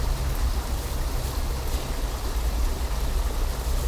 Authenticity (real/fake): real